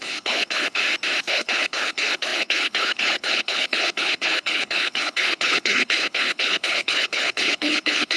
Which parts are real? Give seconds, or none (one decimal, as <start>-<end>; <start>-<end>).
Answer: 0.8-1.3